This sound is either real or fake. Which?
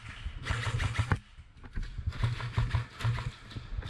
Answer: real